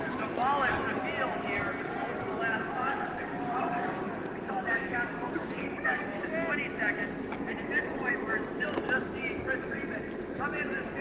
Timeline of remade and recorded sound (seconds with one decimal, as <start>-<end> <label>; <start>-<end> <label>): 0.0-2.8 recorded; 2.8-6.2 remade; 6.2-11.0 recorded